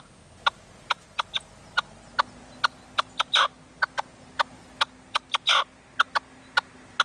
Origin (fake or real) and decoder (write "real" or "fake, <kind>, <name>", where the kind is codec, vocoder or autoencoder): real